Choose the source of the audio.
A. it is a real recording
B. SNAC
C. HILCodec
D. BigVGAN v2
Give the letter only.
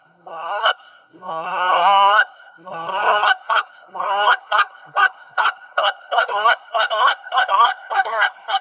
B